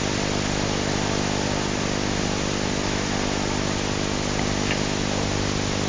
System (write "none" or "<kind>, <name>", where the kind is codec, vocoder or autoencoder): none